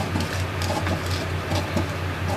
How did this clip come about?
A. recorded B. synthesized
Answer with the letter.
A